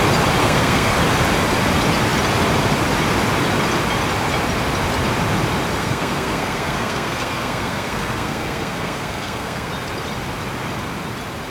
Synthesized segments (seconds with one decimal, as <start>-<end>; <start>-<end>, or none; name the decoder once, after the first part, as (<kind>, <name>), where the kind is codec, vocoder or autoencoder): 0.4-0.9 (codec, SNAC); 5.8-9.7